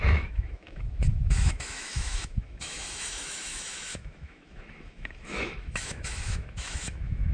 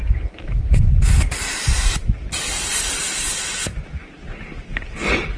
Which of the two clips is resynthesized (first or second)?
first